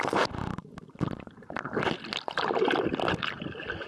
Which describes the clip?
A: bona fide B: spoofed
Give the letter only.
A